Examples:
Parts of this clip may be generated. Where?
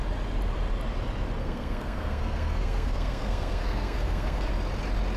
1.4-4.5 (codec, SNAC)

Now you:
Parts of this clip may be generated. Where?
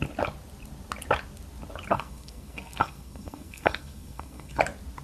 1.9-4.6 (codec, SNAC)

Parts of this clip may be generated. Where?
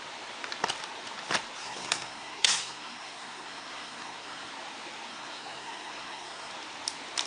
1.6-4.5 (codec, SNAC); 5.1-6.5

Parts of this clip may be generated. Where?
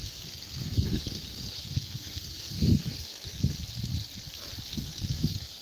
0.0-3.4 (codec, SNAC); 4.7-5.6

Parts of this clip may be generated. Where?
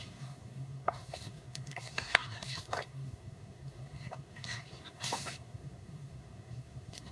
0.0-7.1 (codec, SNAC)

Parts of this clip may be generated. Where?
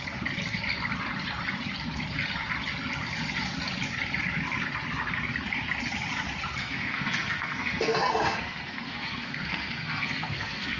6.6-10.8 (codec, SNAC)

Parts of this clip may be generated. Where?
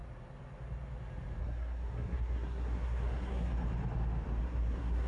1.4-3.5 (codec, SNAC); 4.4-5.1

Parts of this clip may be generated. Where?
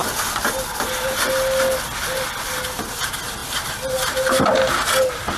none